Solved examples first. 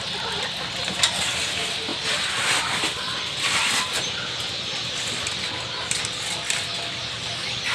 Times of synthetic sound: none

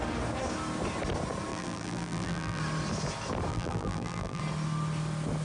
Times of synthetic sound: 1.5-2.6 (vocoder, BigVGAN v2); 3.5-4.4

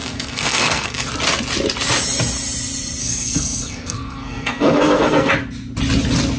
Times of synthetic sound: 0.0-1.1 (codec, SNAC); 3.0-5.3

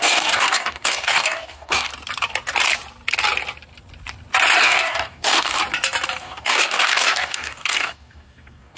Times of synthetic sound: 0.0-1.9 (codec, DAC); 4.6-5.6; 6.2-8.8

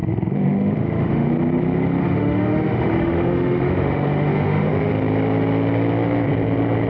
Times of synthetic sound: 0.0-1.3 (autoencoder, DAC-VAE); 2.0-4.9

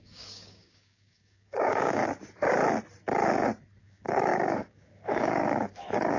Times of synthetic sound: 0.0-2.0 (codec, DAC); 3.8-6.2